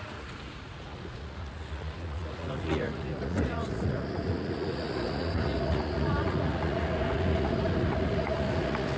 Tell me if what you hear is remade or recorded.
remade